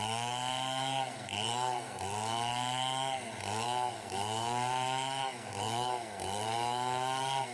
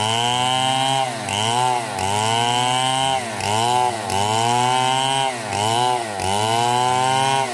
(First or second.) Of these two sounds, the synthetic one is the first